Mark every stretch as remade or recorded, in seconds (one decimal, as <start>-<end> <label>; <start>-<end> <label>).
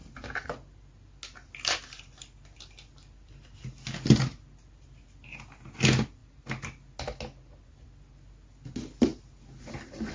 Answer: 0.0-10.1 recorded